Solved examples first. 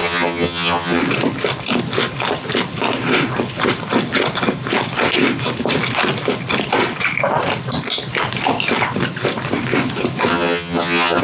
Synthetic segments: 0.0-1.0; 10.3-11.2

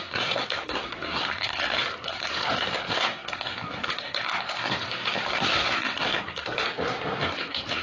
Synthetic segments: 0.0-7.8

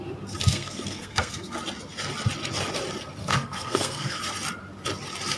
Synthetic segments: 0.5-1.6; 3.2-4.2

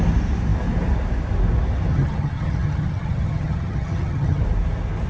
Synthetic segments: 1.9-4.4